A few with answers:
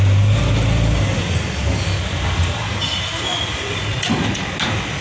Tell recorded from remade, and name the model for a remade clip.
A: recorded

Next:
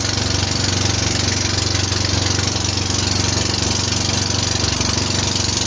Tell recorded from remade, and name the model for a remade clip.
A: recorded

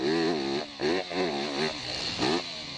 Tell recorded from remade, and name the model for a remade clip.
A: recorded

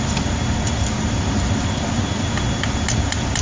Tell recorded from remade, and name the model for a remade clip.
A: recorded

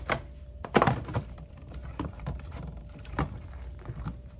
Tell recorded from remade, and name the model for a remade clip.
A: remade, vocoder, BigVGAN v2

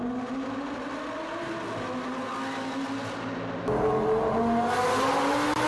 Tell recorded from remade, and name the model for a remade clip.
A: recorded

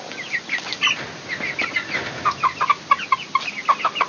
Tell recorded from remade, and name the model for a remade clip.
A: recorded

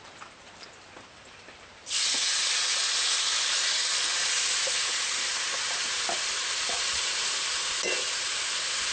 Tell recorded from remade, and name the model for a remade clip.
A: remade, vocoder, BigVGAN v2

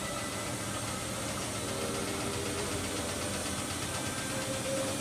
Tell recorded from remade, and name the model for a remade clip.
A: remade, vocoder, BigVGAN v2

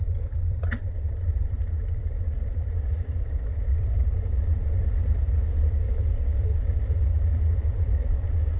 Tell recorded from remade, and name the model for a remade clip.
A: remade, vocoder, BigVGAN v2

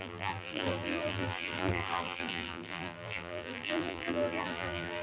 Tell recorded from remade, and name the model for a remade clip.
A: remade, vocoder, BigVGAN v2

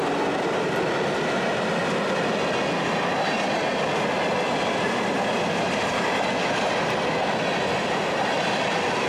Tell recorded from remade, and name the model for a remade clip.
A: recorded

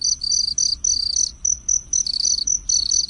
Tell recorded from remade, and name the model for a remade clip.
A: recorded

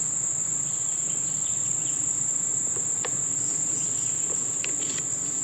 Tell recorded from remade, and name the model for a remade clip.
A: recorded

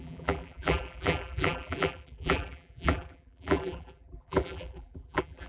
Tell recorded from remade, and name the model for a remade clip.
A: remade, vocoder, BigVGAN v2